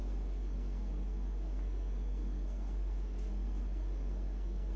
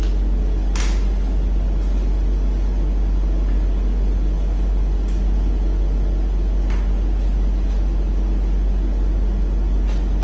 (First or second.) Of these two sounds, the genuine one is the second